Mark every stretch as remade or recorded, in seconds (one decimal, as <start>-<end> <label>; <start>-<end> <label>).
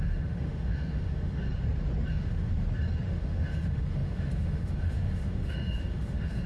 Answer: 0.0-1.4 remade; 1.4-2.1 recorded; 2.1-2.5 remade; 2.5-3.1 recorded; 3.1-6.5 remade